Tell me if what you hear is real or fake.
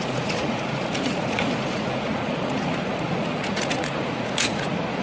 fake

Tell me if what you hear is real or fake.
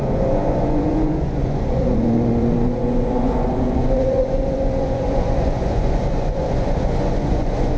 fake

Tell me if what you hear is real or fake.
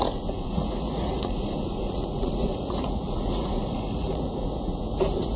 fake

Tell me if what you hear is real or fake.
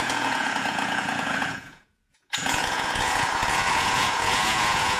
fake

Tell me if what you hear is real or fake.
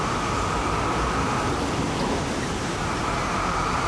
real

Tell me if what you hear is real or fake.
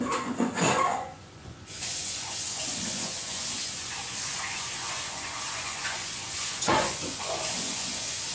fake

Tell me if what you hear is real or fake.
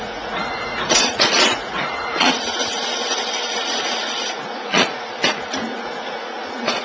fake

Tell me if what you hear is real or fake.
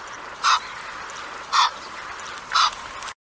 real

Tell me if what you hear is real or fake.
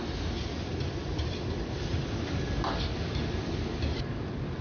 real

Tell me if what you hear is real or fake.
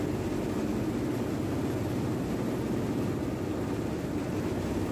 real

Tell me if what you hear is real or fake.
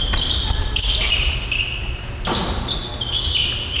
real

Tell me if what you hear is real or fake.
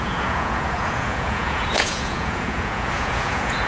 fake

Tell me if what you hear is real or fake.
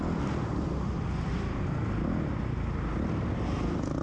real